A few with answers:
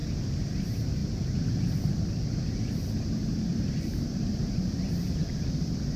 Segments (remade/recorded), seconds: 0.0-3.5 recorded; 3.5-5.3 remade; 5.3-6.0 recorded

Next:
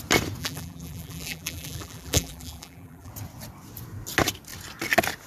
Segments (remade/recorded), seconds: 0.0-0.4 recorded; 0.4-3.1 remade; 3.1-5.3 recorded

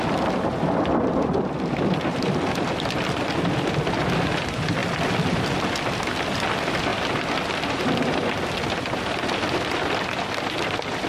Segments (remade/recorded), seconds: 0.0-4.8 remade; 4.8-5.8 recorded; 5.8-11.1 remade

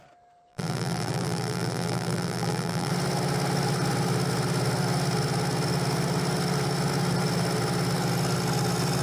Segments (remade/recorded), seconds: 0.0-0.5 recorded; 0.5-2.9 remade; 2.9-9.0 recorded